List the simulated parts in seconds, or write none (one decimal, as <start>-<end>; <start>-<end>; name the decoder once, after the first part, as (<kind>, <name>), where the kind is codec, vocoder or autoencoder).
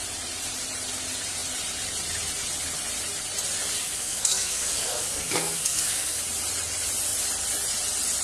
3.8-6.2 (codec, SNAC)